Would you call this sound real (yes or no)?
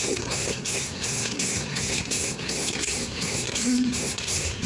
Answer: no